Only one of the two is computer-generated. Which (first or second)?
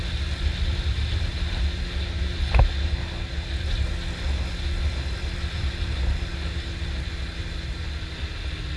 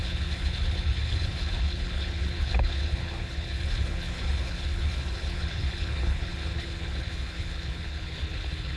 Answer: second